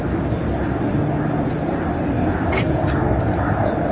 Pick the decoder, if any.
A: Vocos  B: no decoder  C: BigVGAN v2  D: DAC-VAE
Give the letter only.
B